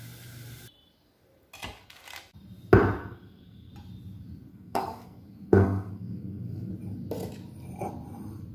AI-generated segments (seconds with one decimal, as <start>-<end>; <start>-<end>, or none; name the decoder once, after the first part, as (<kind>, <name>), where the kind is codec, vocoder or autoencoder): 3.0-3.7 (codec, SNAC); 4.5-6.7